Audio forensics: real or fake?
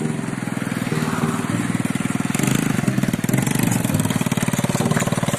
real